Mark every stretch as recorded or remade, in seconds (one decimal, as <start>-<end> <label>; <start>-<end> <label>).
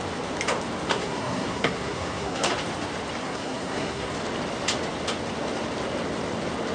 0.0-0.9 recorded; 0.9-2.5 remade; 2.5-3.2 recorded; 3.2-4.1 remade; 4.1-6.7 recorded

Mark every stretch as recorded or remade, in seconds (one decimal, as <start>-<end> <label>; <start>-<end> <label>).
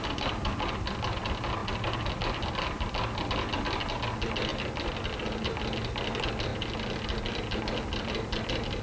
0.0-8.8 recorded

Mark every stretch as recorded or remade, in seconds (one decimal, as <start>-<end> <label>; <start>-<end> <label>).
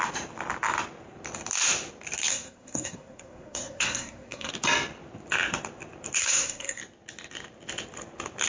0.0-2.3 recorded; 2.3-4.5 remade; 4.5-6.2 recorded; 6.2-6.8 remade; 6.8-8.5 recorded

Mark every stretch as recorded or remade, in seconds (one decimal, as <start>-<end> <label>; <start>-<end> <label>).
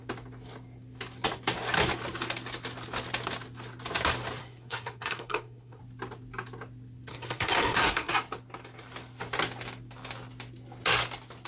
0.0-4.4 recorded; 4.4-5.8 remade; 5.8-7.1 recorded; 7.1-8.1 remade; 8.1-11.5 recorded